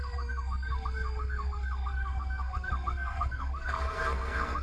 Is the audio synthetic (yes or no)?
yes